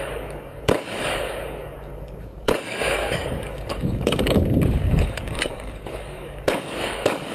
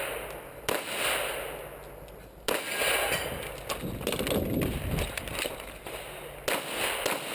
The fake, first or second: first